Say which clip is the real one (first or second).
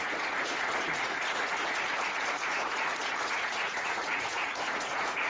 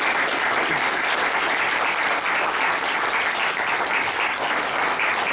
second